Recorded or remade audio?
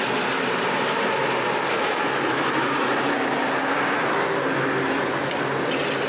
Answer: recorded